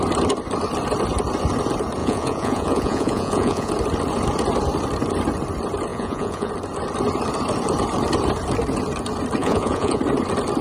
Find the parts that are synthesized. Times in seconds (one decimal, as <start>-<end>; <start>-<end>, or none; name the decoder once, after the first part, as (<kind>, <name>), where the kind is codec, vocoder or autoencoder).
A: 2.0-3.7 (vocoder, Vocos); 5.9-6.5; 9.4-10.0